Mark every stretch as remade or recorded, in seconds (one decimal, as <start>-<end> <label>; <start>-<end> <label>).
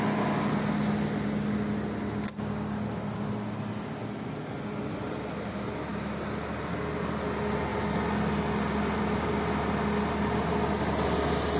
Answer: 0.0-11.6 recorded